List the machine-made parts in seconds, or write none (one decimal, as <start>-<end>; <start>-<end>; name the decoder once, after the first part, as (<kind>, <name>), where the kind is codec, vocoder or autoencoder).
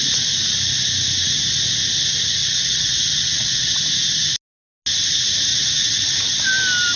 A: 2.4-3.8 (vocoder, WaveNeXt); 5.5-6.4